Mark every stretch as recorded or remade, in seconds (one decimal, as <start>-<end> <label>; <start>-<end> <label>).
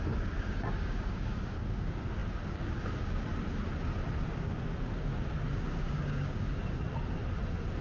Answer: 0.0-3.3 remade; 3.3-4.3 recorded; 4.3-6.6 remade; 6.6-7.8 recorded